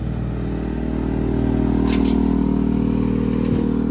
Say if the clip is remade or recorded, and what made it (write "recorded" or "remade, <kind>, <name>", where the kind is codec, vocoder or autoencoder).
recorded